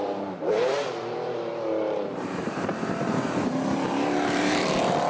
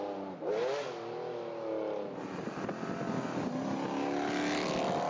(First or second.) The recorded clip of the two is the second